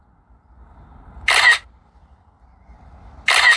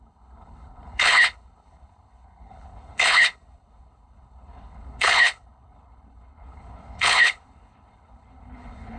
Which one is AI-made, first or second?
second